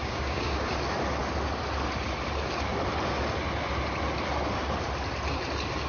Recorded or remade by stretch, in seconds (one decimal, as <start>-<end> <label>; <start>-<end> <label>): 0.0-0.7 remade; 0.7-5.9 recorded